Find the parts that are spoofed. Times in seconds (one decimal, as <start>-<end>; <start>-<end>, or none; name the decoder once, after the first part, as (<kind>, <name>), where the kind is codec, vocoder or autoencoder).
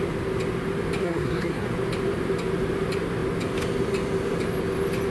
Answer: 1.0-1.7 (codec, SNAC)